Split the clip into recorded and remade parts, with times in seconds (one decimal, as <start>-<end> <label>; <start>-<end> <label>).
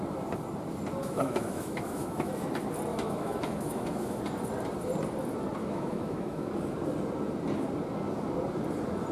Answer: 0.0-1.0 recorded; 1.0-2.3 remade; 2.3-2.9 recorded; 2.9-4.2 remade; 4.2-5.6 recorded; 5.6-6.5 remade; 6.5-9.1 recorded